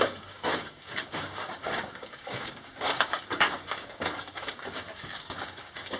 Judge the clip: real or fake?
fake